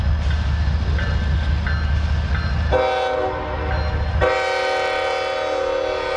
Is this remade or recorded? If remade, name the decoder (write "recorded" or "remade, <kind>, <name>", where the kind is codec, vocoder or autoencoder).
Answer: recorded